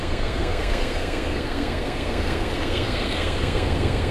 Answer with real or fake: fake